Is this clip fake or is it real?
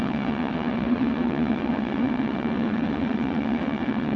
fake